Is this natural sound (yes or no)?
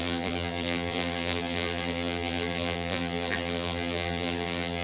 no